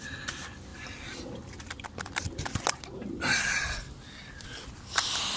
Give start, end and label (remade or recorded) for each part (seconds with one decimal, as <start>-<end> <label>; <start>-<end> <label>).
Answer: 0.0-5.4 recorded